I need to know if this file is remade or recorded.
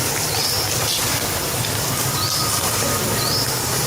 recorded